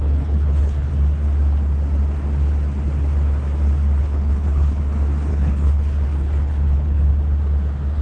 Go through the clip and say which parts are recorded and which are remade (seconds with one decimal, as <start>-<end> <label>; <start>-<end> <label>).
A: 0.0-0.9 remade; 0.9-4.0 recorded; 4.0-4.8 remade; 4.8-5.3 recorded; 5.3-7.1 remade; 7.1-8.0 recorded